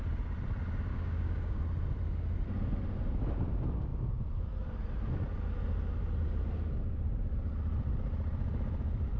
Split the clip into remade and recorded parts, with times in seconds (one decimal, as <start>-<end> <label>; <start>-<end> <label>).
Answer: 0.0-0.9 recorded; 0.9-1.6 remade; 1.6-9.2 recorded